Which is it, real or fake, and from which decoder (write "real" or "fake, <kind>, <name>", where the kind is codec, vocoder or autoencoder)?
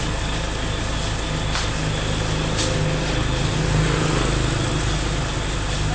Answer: real